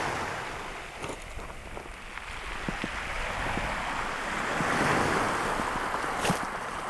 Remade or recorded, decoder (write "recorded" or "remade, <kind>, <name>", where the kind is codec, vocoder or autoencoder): recorded